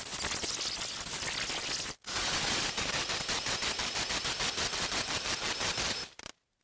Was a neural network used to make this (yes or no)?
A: no